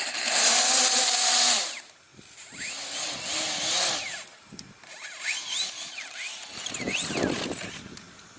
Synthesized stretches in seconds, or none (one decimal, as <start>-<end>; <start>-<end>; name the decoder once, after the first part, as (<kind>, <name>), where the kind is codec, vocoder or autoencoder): 4.3-5.0 (vocoder, BigVGAN v2); 6.5-7.1